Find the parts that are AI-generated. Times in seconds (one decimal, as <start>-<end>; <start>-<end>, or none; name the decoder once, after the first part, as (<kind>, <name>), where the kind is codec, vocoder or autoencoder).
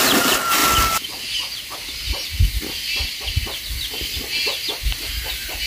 none